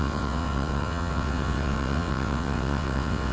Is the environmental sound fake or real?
fake